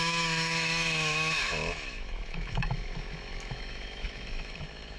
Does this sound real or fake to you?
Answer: fake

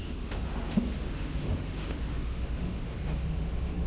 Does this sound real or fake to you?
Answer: fake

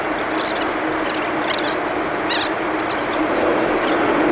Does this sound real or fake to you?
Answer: real